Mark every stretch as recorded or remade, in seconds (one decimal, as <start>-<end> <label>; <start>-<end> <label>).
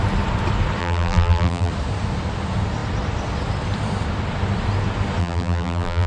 0.0-0.8 recorded; 0.8-1.7 remade; 1.7-5.2 recorded; 5.2-6.1 remade